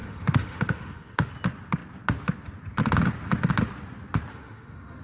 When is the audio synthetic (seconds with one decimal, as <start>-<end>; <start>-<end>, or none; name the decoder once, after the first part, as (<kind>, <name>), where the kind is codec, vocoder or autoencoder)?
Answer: 0.0-1.3 (autoencoder, DAC-VAE); 4.3-5.0